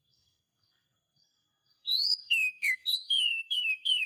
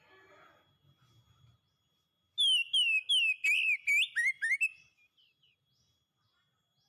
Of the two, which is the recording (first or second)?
second